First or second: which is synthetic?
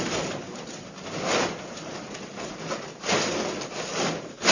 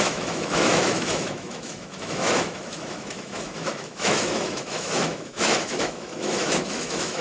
second